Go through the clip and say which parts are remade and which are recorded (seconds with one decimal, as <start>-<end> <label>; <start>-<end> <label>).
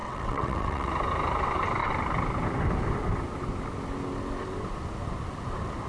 0.0-0.9 remade; 0.9-5.9 recorded